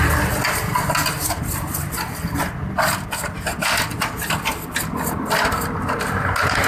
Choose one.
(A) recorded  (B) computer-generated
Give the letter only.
A